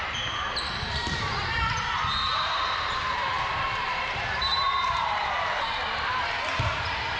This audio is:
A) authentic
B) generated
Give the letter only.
B